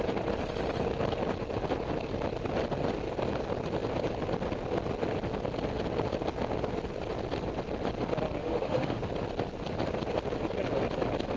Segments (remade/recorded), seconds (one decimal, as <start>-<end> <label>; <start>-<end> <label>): 0.0-8.4 recorded; 8.4-9.0 remade; 9.0-11.4 recorded